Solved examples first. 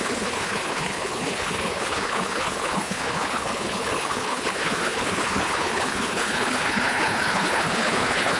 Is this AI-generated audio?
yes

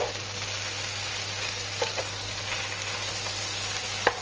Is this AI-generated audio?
no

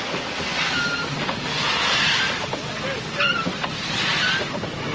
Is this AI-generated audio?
no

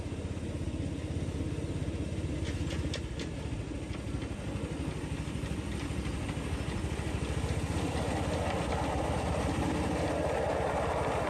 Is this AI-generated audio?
no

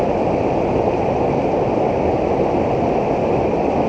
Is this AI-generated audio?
no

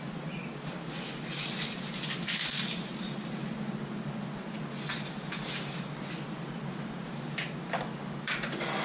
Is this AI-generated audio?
no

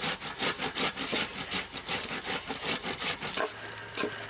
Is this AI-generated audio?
no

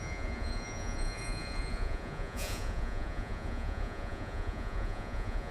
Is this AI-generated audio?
yes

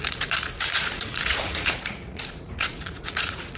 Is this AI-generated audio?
yes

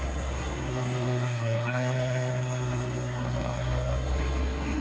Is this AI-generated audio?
yes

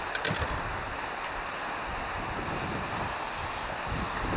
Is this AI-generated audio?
no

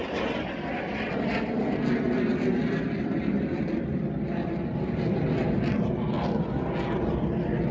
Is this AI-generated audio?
no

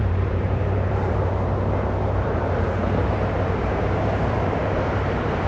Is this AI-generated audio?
yes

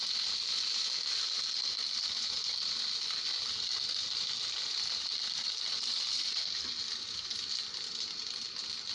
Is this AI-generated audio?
no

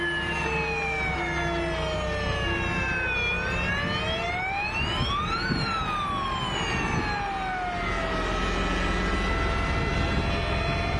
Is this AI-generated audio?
no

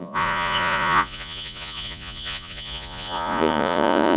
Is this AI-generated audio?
yes